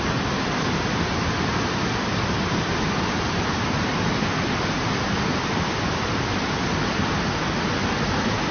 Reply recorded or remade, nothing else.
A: recorded